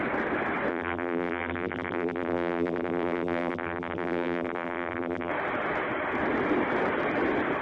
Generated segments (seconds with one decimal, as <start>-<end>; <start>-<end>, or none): 0.7-5.3